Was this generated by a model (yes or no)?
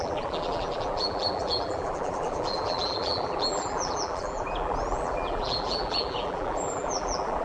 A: yes